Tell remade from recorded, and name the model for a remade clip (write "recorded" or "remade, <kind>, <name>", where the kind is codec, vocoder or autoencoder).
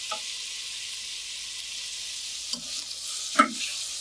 recorded